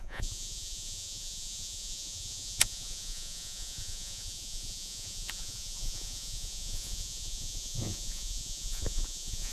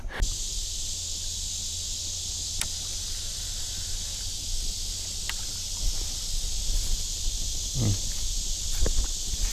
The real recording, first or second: second